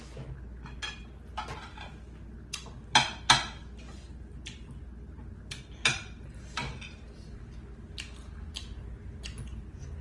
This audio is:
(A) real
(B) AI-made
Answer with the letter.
A